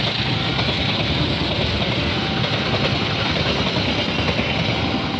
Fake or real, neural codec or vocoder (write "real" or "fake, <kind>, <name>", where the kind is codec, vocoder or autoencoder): real